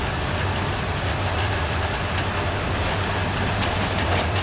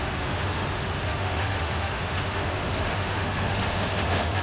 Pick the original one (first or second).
first